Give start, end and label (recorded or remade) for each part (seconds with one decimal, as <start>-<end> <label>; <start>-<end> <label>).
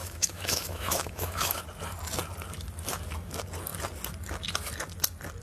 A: 0.0-1.6 remade; 1.6-5.4 recorded